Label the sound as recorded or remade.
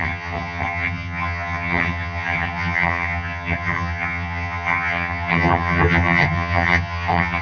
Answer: remade